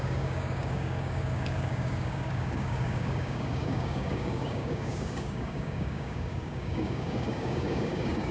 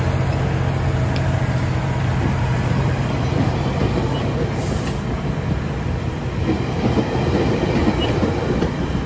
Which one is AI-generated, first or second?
first